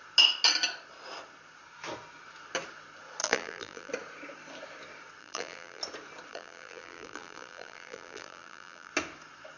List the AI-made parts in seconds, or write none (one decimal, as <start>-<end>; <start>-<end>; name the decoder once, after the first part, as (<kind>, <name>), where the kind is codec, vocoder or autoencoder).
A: 3.2-3.9 (vocoder, BigVGAN v2); 5.2-5.8; 6.3-8.9